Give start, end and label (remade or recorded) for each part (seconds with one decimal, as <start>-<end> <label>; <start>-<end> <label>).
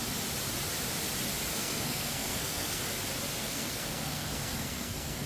0.0-1.5 recorded; 1.5-2.8 remade; 2.8-3.4 recorded; 3.4-5.3 remade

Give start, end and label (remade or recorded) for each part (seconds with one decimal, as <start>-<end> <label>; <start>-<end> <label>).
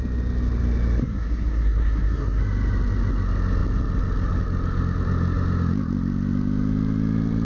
0.0-1.0 recorded; 1.0-2.4 remade; 2.4-7.4 recorded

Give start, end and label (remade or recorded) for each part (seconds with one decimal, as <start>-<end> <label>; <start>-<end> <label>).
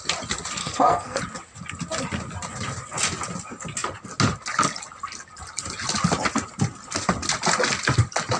0.0-0.6 recorded; 0.6-1.2 remade; 1.2-8.4 recorded